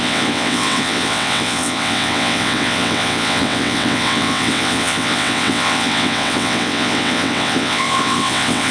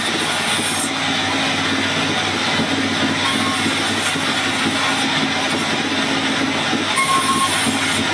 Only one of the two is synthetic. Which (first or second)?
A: first